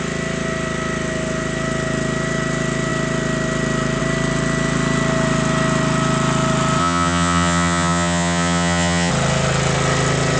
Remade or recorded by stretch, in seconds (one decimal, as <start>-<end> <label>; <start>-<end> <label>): 0.0-6.8 recorded; 6.8-9.1 remade; 9.1-10.4 recorded